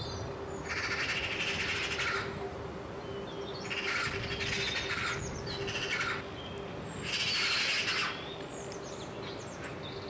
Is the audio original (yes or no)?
yes